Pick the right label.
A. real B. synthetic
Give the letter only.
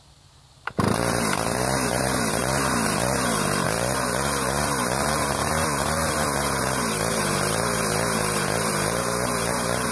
B